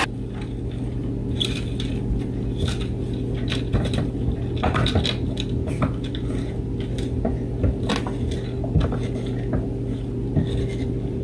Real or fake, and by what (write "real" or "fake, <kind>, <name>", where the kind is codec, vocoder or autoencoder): real